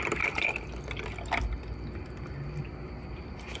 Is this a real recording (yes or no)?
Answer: yes